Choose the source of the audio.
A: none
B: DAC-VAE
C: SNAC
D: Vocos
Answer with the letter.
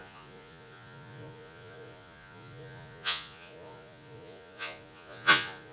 D